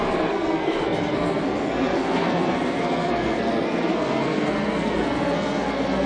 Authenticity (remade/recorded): remade